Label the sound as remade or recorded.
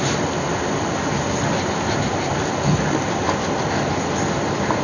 recorded